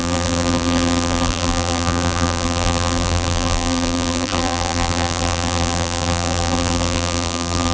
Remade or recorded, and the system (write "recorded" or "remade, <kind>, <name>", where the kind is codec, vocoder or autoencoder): remade, vocoder, BigVGAN v2